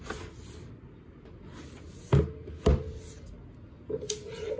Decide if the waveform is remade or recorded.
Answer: recorded